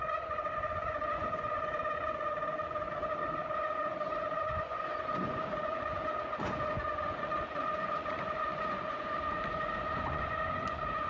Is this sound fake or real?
fake